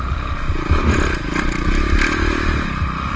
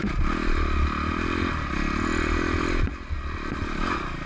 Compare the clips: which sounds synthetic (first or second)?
first